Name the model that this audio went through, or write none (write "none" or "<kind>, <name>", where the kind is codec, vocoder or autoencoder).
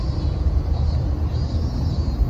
none